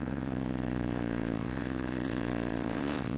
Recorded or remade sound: remade